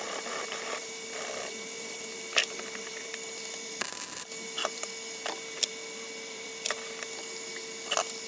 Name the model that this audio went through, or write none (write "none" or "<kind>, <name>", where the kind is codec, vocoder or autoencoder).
vocoder, BigVGAN v2